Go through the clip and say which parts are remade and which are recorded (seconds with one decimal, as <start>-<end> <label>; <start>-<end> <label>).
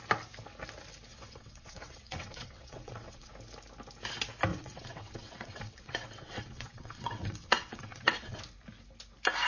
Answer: 0.0-1.1 recorded; 1.1-3.3 remade; 3.3-4.5 recorded; 4.5-8.4 remade; 8.4-9.5 recorded